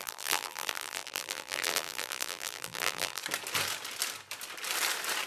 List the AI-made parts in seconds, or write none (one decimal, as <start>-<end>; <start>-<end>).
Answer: 0.0-3.2